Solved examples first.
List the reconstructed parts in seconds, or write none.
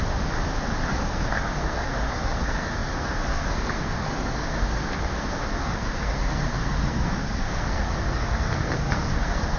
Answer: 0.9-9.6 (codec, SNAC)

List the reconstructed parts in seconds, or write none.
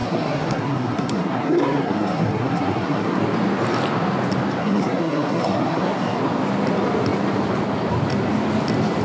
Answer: 0.0-3.2 (codec, SNAC); 4.6-6.2